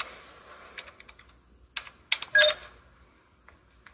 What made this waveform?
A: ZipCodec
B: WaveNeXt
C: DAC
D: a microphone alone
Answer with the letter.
D